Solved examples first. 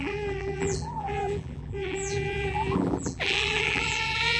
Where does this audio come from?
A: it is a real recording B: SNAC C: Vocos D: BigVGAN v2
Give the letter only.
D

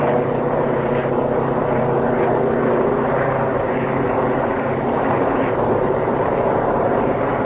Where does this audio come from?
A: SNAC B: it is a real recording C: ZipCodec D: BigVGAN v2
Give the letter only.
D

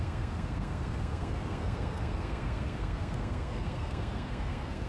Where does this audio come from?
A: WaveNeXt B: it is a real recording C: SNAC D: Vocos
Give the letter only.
C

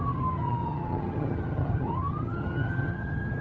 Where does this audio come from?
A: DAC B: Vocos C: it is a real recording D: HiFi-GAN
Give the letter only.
D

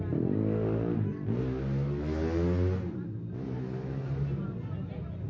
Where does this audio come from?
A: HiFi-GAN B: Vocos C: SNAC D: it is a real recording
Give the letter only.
D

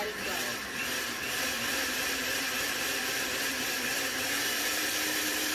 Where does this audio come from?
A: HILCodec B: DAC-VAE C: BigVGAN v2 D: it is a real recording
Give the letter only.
C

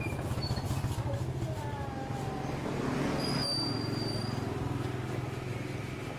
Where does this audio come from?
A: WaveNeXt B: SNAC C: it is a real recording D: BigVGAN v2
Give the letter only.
C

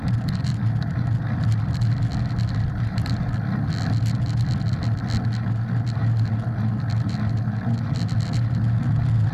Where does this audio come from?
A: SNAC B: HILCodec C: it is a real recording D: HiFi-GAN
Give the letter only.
C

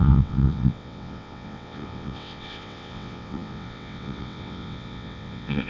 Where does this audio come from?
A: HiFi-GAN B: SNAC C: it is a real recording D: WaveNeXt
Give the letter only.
D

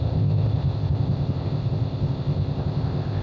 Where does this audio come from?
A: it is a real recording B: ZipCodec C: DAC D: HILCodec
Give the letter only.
B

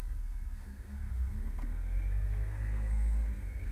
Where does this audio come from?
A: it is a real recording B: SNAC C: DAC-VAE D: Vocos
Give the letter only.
B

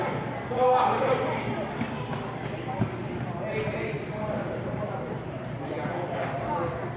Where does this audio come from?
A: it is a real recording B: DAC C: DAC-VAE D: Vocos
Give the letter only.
A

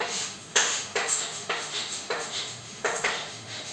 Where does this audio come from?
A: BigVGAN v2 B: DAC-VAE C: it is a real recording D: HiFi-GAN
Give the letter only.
B